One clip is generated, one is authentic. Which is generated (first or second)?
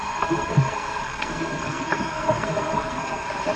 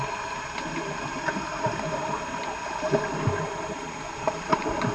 first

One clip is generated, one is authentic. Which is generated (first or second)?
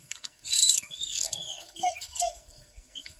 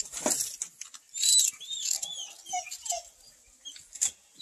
first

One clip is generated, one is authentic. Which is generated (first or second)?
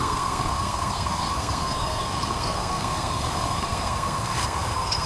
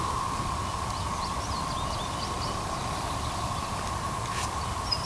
first